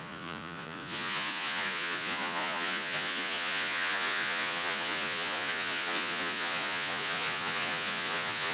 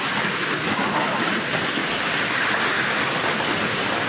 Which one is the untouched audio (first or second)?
second